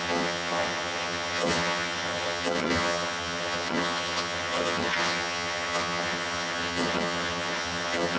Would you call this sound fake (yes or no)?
yes